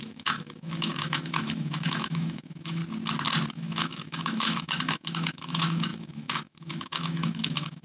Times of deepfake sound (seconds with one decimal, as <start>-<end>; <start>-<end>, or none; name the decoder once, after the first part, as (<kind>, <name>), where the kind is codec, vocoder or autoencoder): 0.0-2.8 (autoencoder, DAC-VAE); 3.5-7.8